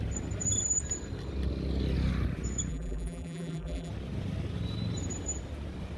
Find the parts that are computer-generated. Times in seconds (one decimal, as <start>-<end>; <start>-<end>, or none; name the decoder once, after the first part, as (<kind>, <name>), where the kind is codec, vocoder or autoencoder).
2.7-3.9 (vocoder, BigVGAN v2)